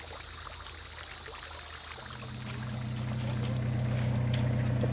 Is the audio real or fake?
real